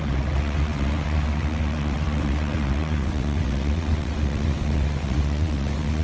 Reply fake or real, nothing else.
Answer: fake